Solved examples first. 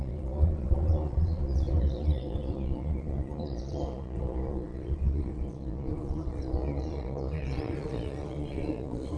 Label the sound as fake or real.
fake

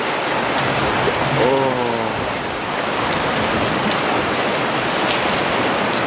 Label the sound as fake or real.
real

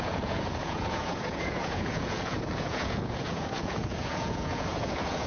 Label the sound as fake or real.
fake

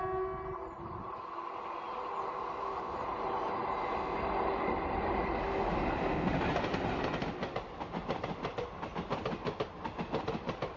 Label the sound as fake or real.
real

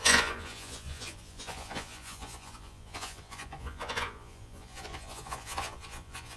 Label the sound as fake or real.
fake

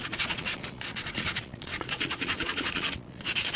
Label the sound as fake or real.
fake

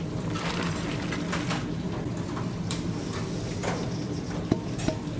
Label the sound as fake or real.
real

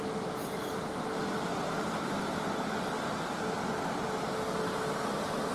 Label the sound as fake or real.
real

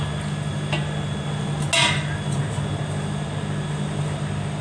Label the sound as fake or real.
real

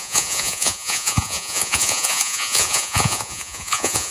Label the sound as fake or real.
fake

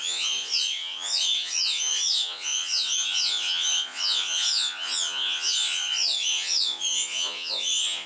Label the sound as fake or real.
fake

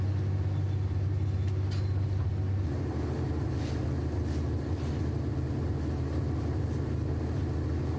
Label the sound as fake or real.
real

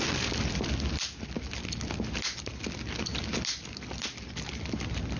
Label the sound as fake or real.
real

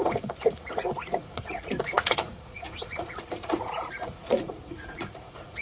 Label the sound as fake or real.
fake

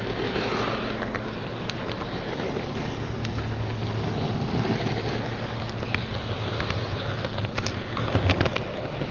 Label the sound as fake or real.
real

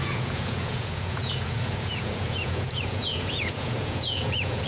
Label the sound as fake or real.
fake